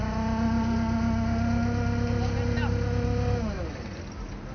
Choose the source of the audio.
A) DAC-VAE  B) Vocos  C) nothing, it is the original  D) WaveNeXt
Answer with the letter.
C